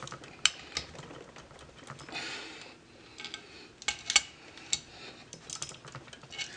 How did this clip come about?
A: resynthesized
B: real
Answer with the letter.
B